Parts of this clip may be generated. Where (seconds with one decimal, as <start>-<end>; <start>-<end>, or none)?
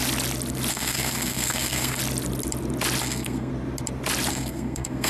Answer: 0.7-2.0; 3.0-3.5; 4.3-5.1